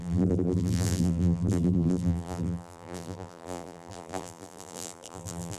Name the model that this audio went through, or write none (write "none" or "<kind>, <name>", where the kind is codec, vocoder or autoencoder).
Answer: vocoder, BigVGAN v2